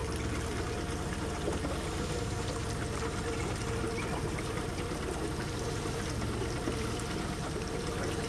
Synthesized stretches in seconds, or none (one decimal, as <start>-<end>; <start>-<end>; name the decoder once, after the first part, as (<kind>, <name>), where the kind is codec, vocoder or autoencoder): none